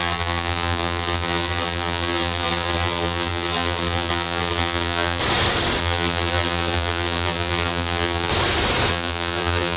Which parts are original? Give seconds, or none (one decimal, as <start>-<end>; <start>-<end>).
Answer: 5.2-5.8; 8.3-8.9